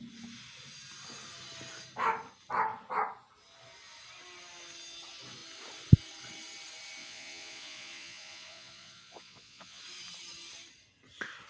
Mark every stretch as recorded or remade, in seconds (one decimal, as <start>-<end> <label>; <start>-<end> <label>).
0.0-7.0 recorded; 7.0-9.8 remade; 9.8-11.5 recorded